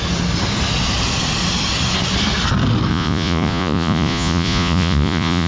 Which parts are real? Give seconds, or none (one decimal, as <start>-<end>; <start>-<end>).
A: 0.0-2.9